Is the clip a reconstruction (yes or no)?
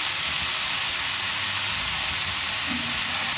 no